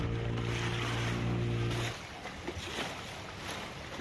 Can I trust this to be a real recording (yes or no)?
yes